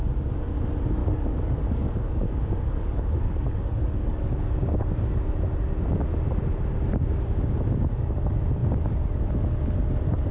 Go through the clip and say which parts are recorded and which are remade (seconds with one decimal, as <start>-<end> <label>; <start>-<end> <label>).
0.0-1.0 recorded; 1.0-4.4 remade; 4.4-10.3 recorded